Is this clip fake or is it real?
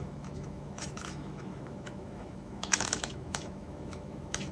fake